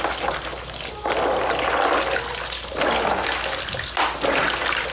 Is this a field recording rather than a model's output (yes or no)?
yes